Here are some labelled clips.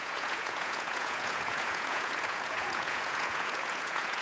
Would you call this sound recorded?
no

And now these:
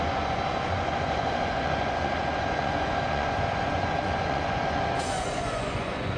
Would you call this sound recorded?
no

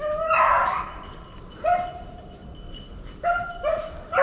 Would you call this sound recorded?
yes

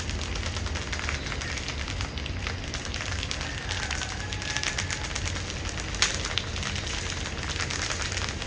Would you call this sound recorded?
yes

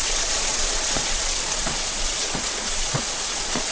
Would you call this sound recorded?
no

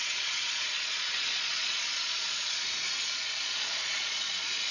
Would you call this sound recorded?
no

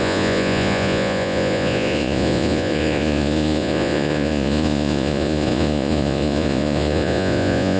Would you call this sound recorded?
no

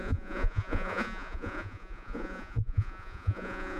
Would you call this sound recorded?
no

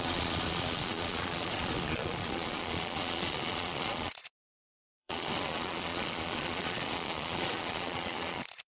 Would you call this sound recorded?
no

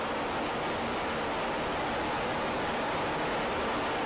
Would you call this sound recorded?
yes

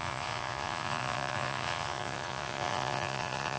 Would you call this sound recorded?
no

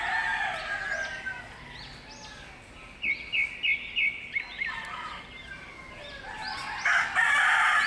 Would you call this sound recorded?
yes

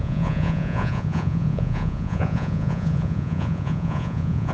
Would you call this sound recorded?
no